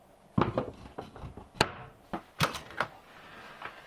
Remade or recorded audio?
recorded